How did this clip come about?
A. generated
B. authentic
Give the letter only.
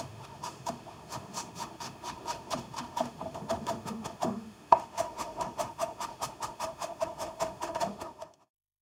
A